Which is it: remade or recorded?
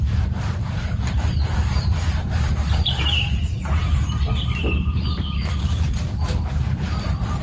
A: remade